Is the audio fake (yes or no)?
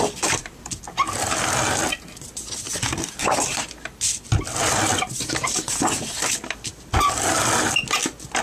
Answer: no